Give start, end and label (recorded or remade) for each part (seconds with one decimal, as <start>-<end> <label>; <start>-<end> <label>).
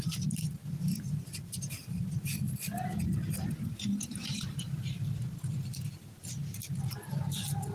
0.0-0.6 recorded; 0.6-5.2 remade; 5.2-7.7 recorded